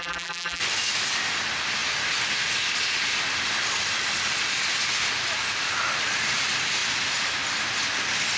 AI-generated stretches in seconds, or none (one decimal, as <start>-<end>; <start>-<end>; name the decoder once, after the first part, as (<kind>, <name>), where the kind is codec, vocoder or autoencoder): 0.0-0.6 (vocoder, BigVGAN v2)